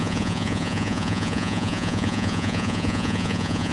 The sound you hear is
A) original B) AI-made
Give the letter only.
B